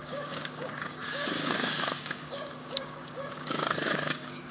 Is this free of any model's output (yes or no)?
no